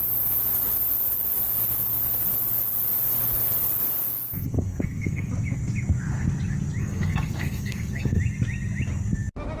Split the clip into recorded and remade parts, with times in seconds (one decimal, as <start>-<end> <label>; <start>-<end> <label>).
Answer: 0.0-4.3 recorded; 4.3-5.3 remade; 5.3-6.8 recorded; 6.8-8.2 remade; 8.2-9.6 recorded